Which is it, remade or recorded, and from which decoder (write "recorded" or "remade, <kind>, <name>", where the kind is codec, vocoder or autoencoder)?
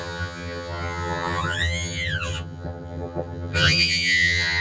remade, vocoder, HiFi-GAN